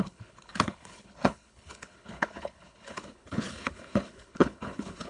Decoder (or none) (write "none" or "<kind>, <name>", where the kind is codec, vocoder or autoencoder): codec, HILCodec